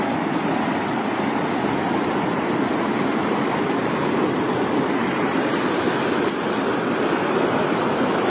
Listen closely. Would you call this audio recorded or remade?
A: recorded